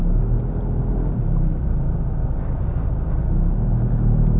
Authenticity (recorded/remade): recorded